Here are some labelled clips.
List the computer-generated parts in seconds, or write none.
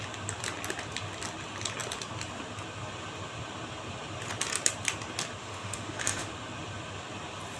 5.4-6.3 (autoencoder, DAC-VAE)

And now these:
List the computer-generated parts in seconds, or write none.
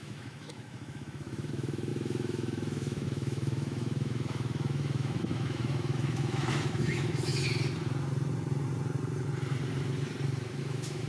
0.0-7.3 (autoencoder, DAC-VAE); 10.6-11.1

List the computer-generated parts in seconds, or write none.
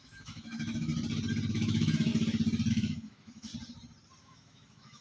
0.0-0.9 (autoencoder, DAC-VAE); 1.5-2.1; 2.7-3.5; 4.2-5.0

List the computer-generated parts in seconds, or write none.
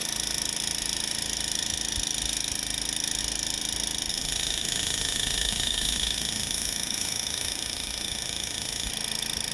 4.1-8.9 (autoencoder, DAC-VAE)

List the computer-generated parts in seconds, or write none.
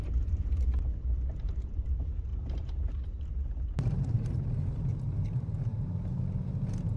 none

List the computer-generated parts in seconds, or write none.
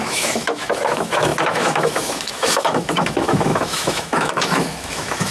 0.0-5.3 (autoencoder, DAC-VAE)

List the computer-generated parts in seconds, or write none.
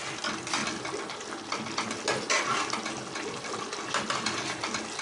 none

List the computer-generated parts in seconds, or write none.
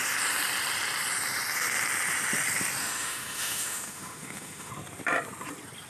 2.8-4.7 (autoencoder, DAC-VAE)